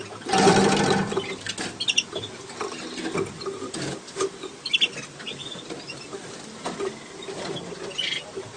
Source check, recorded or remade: recorded